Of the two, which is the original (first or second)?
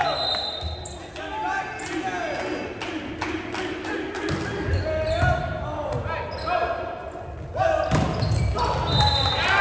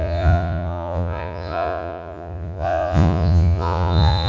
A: first